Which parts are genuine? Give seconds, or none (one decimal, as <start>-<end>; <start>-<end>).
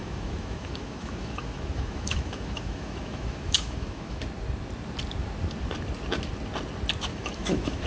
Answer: 4.2-7.1